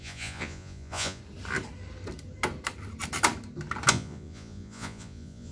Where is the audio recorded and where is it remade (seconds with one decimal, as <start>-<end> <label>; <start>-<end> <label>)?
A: 0.0-1.2 remade; 1.2-3.9 recorded; 3.9-5.5 remade